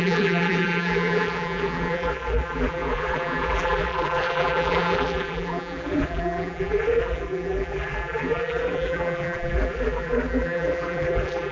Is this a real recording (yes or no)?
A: no